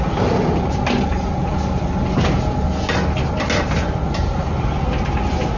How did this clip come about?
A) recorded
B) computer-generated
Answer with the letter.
A